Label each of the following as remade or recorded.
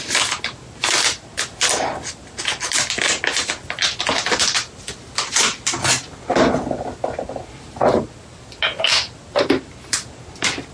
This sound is recorded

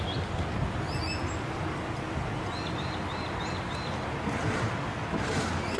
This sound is recorded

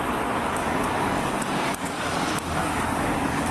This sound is remade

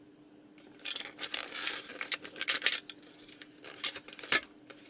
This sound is recorded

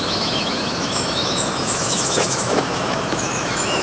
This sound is remade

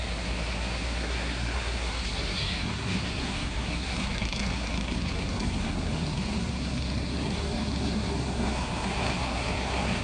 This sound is remade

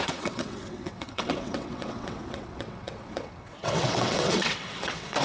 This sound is remade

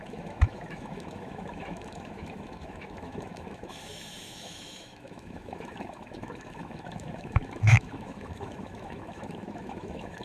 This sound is remade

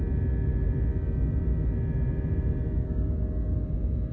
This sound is recorded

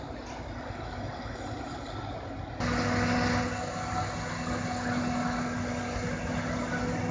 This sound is recorded